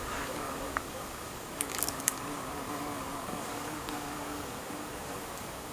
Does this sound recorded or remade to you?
remade